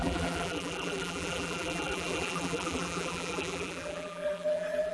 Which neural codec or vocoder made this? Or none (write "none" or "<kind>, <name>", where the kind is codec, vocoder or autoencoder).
vocoder, BigVGAN v2